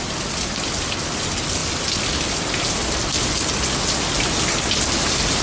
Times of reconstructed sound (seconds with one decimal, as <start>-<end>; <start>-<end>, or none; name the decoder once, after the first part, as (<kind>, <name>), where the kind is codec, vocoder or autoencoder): none